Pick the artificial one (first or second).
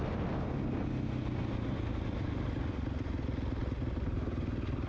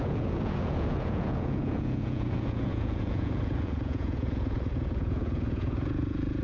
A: second